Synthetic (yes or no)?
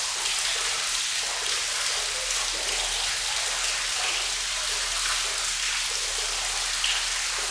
no